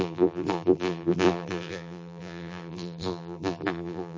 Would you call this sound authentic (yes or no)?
no